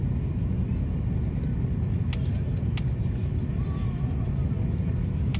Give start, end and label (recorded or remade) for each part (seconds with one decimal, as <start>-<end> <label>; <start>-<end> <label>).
0.0-5.4 recorded